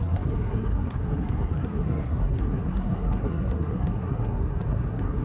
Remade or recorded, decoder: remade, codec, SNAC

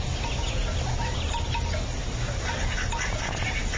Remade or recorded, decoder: recorded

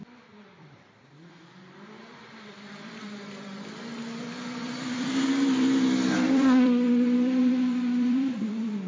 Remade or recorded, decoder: remade, vocoder, BigVGAN v2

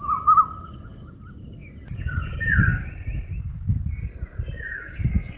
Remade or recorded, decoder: recorded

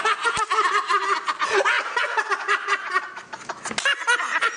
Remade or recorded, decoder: recorded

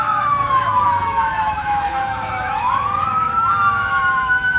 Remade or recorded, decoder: remade, autoencoder, DAC-VAE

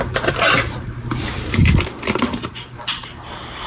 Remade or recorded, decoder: remade, vocoder, BigVGAN v2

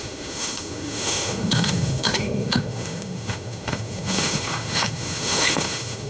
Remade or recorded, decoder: remade, autoencoder, DAC-VAE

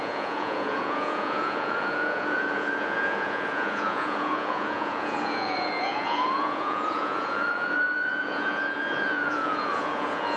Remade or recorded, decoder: remade, vocoder, Vocos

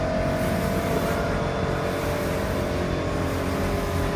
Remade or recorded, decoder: recorded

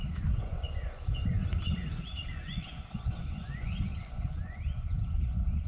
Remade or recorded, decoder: remade, vocoder, Vocos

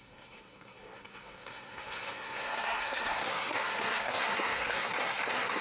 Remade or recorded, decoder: remade, codec, SNAC